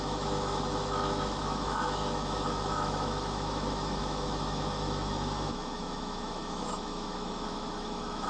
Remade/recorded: remade